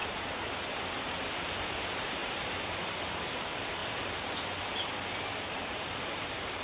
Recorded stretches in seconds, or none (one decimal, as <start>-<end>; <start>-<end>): 0.0-1.1; 3.8-5.4